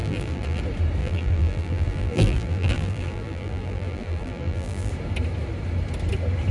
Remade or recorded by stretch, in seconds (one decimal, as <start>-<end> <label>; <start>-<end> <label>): 0.0-0.6 remade; 0.6-1.0 recorded; 1.0-4.9 remade; 4.9-6.5 recorded